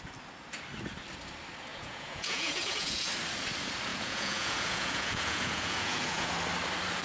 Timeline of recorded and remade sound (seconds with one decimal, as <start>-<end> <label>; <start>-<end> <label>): 0.0-1.7 recorded; 1.7-3.1 remade; 3.1-3.9 recorded; 3.9-6.3 remade; 6.3-7.0 recorded